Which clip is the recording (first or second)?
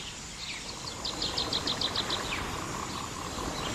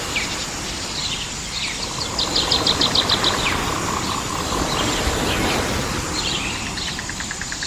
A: first